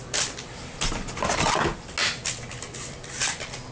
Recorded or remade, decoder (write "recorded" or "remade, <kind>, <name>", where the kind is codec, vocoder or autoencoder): recorded